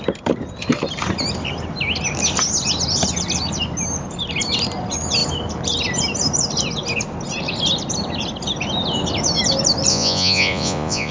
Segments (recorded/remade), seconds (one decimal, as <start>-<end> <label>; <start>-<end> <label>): 0.0-9.9 recorded; 9.9-11.1 remade